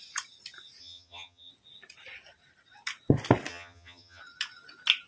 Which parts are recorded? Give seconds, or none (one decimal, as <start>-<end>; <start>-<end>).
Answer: 0.0-0.8; 1.5-3.5; 4.2-5.1